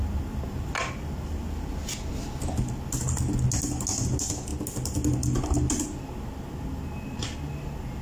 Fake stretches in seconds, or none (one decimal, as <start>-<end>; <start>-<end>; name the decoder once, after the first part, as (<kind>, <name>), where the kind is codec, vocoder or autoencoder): none

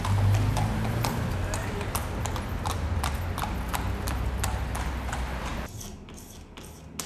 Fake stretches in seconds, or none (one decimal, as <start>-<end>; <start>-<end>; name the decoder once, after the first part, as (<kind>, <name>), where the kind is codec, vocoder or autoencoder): none

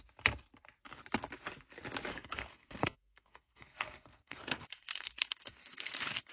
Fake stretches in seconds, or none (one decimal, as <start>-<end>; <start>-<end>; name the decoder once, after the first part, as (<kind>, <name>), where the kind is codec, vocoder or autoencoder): 2.1-6.3 (codec, SNAC)

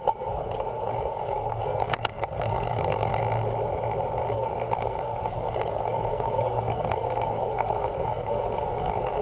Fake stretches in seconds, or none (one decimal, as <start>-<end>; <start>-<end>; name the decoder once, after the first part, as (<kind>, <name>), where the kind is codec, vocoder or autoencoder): 0.0-3.1 (codec, SNAC); 4.3-9.2

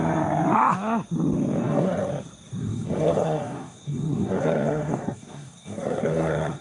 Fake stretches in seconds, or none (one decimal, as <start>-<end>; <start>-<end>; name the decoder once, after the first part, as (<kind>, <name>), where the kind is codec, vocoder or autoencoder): 1.6-2.1 (codec, SNAC); 2.6-6.6

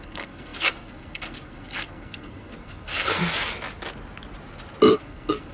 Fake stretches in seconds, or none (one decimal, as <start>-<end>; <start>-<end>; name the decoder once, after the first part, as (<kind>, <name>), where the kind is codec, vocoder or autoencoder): 0.0-3.2 (codec, SNAC); 4.9-5.5

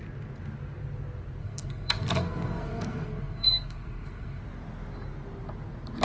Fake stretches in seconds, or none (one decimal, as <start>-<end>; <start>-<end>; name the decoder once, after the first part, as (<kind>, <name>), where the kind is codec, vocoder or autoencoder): 1.4-4.4 (codec, SNAC)